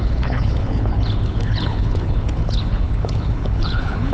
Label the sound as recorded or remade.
remade